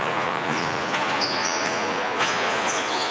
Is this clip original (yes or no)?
no